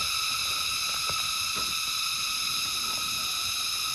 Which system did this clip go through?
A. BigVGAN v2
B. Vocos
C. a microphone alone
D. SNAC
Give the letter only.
C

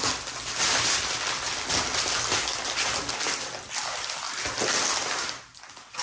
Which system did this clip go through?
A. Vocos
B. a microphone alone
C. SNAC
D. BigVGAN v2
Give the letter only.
B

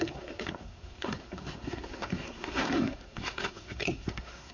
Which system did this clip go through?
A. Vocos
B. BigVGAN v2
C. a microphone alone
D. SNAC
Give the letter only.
D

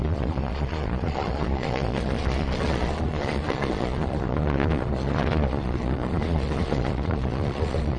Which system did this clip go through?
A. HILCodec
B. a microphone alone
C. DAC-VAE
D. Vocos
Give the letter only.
D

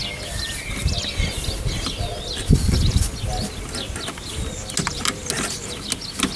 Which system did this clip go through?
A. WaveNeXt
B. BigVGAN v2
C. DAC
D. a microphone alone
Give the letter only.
D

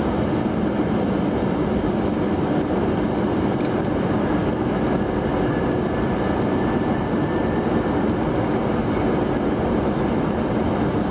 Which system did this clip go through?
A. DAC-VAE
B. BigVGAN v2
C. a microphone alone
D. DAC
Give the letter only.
C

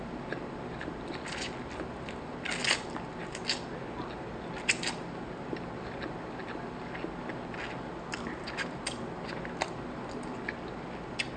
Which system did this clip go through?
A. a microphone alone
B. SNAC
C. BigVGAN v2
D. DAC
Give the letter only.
A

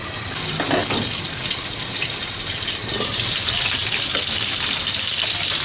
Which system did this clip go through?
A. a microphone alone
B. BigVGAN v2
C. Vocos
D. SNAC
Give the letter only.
A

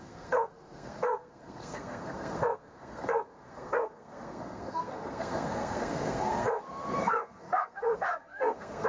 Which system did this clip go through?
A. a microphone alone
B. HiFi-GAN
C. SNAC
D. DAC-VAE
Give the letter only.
C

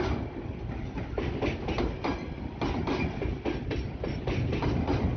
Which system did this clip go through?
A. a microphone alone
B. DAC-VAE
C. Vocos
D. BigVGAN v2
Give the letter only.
A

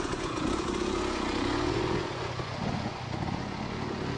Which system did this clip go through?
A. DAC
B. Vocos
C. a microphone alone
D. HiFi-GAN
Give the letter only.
B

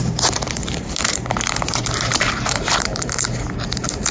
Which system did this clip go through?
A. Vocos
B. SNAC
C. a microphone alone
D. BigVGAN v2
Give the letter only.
D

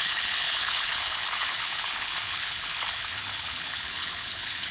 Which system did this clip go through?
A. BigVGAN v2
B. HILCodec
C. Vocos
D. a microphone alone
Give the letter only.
B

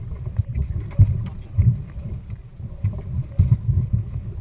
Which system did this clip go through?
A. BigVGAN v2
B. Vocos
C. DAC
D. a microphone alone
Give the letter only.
D